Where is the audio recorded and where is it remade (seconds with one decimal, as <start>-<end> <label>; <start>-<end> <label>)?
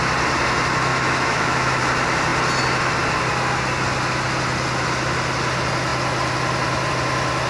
0.0-0.9 recorded; 0.9-1.8 remade; 1.8-7.5 recorded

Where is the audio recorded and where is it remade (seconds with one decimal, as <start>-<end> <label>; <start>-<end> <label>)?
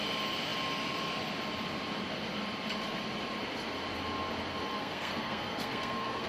0.0-4.7 recorded; 4.7-6.3 remade